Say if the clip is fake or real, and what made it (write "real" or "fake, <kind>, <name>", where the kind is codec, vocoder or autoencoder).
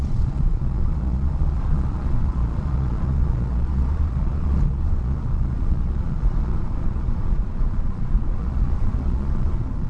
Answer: fake, vocoder, Vocos